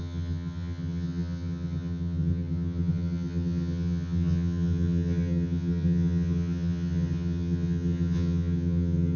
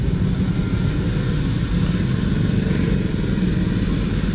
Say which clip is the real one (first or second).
second